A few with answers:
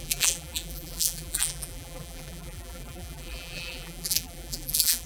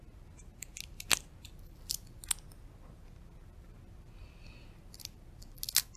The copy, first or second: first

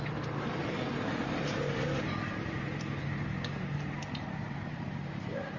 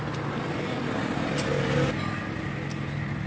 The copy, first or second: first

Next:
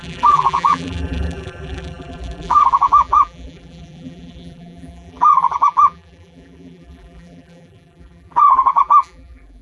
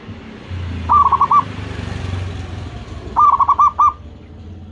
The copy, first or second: first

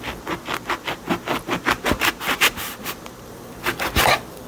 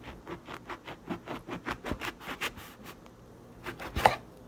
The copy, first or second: first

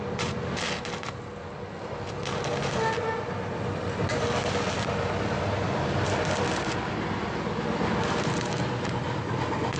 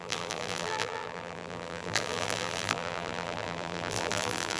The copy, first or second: second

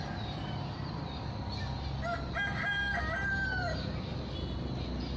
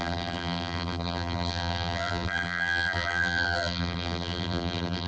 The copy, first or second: second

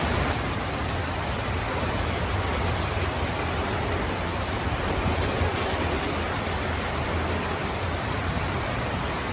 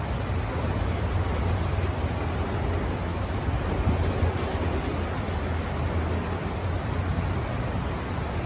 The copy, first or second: first